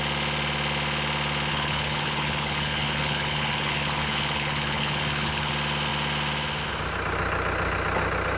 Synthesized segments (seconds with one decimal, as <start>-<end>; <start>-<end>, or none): 1.5-5.5